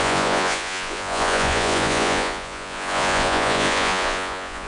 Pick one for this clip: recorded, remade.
remade